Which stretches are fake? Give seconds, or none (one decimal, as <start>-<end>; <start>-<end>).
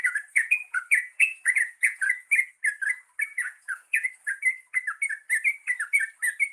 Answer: 0.0-2.3; 3.3-4.1